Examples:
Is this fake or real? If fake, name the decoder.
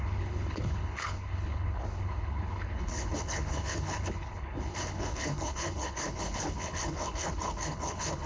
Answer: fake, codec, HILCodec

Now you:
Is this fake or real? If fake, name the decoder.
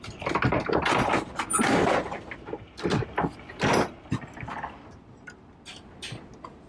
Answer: real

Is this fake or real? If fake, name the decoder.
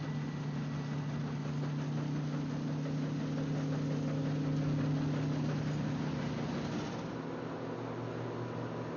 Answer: real